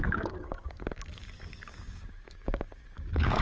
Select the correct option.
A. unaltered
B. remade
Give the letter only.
B